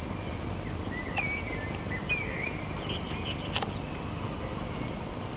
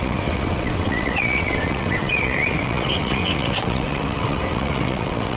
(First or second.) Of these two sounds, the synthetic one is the second